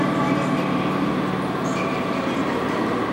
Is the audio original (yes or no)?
yes